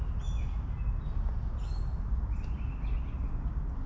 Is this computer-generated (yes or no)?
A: no